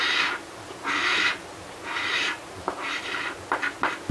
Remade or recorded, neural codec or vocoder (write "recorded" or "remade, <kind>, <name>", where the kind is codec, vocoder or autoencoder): recorded